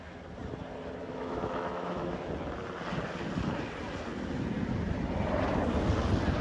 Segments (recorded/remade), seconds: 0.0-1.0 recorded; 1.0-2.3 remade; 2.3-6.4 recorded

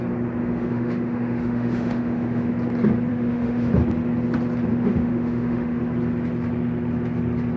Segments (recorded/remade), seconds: 0.0-0.4 recorded; 0.4-2.5 remade; 2.5-3.1 recorded; 3.1-3.7 remade; 3.7-4.7 recorded; 4.7-5.8 remade; 5.8-7.6 recorded

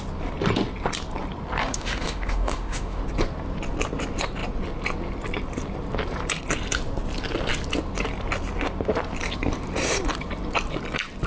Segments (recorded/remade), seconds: 0.0-1.6 recorded; 1.6-3.0 remade; 3.0-11.3 recorded

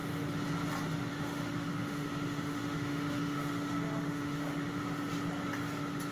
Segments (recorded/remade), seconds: 0.0-1.1 recorded; 1.1-4.8 remade; 4.8-6.1 recorded

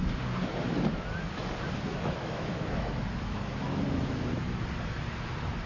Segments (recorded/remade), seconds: 0.0-1.9 recorded; 1.9-4.6 remade; 4.6-5.7 recorded

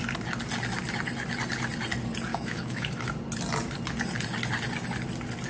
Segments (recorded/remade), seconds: 0.0-2.3 recorded; 2.3-2.9 remade; 2.9-5.5 recorded

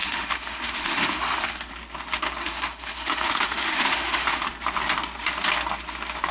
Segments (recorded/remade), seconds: 0.0-1.7 remade; 1.7-2.4 recorded; 2.4-4.5 remade; 4.5-6.3 recorded